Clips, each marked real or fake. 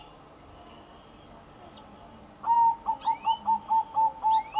real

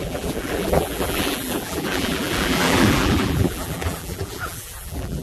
fake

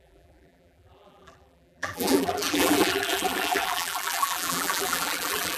fake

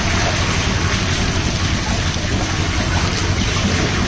real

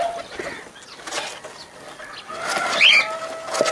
real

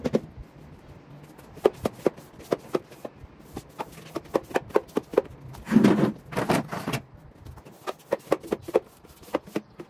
real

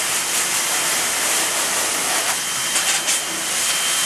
real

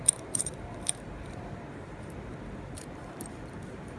fake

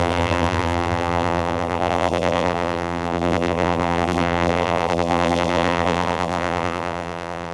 fake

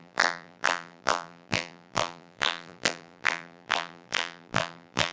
fake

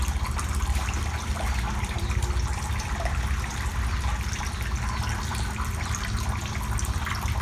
fake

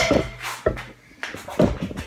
real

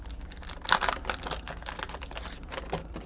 real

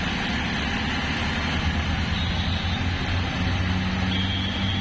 real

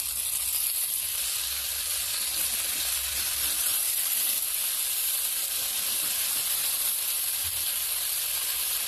fake